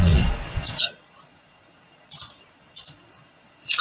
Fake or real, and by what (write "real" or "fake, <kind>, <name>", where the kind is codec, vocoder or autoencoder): fake, vocoder, Vocos